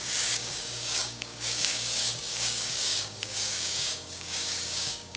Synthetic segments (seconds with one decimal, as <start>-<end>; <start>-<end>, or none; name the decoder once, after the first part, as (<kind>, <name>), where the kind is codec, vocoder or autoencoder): 0.0-5.2 (codec, DAC)